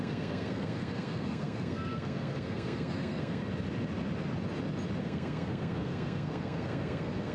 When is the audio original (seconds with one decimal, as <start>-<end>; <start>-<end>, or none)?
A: 3.4-5.0